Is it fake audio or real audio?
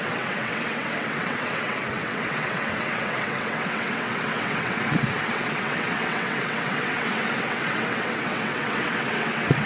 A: fake